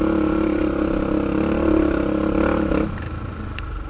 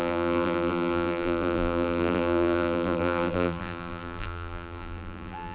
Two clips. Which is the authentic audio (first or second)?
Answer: first